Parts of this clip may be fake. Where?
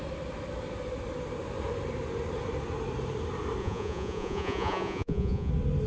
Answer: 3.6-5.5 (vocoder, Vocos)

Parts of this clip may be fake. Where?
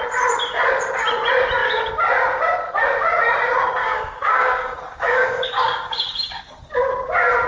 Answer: 3.8-6.7 (codec, DAC)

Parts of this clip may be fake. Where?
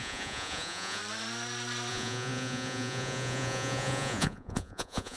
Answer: 0.0-1.0 (vocoder, Vocos); 1.9-5.2